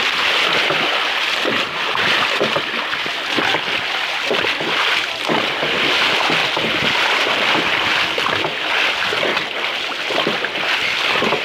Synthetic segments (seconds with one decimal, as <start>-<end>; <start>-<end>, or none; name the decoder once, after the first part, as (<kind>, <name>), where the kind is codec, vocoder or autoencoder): none